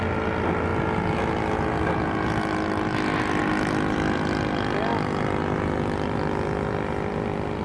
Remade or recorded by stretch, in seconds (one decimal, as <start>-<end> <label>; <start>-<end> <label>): 0.0-7.6 recorded